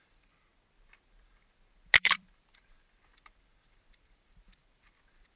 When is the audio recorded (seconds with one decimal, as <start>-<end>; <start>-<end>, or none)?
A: 0.5-2.0